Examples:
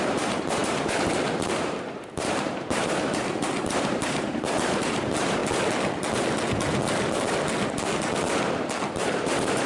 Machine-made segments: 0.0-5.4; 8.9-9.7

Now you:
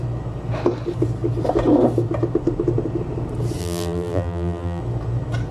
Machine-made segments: 3.6-4.8

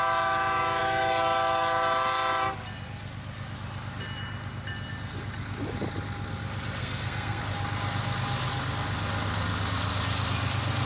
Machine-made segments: 6.8-7.4

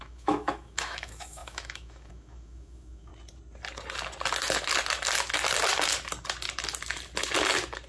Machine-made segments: 0.0-3.1

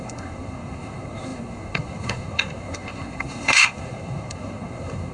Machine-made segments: 0.0-5.1

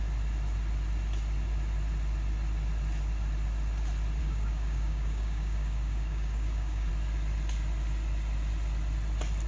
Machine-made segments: 4.2-6.9

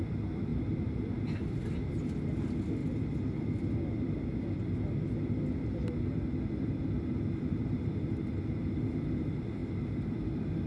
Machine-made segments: none

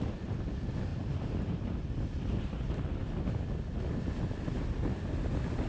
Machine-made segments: 0.9-1.8